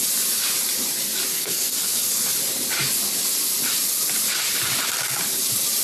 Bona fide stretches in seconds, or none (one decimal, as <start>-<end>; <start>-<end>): 0.0-1.3; 2.1-5.8